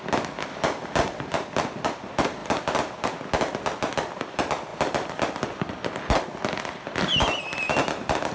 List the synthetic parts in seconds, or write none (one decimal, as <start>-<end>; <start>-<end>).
none

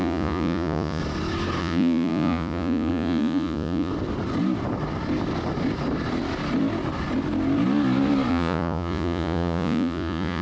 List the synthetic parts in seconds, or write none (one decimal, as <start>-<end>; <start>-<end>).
0.0-1.0; 1.6-3.9; 8.3-10.4

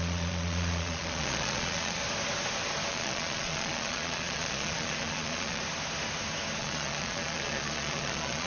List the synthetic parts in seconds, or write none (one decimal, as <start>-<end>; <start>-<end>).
0.0-2.0; 2.9-5.6; 6.6-8.5

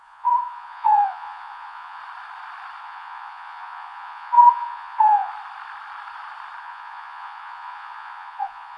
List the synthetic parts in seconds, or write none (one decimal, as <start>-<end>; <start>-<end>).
0.0-2.0; 2.8-5.3; 6.6-8.8

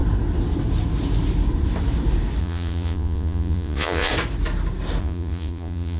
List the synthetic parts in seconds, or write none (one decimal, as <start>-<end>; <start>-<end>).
2.4-4.1; 5.0-6.0

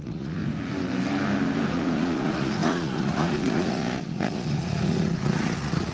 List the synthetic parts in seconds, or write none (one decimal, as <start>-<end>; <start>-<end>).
0.0-0.4; 1.7-5.9